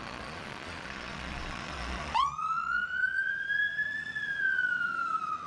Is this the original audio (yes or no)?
no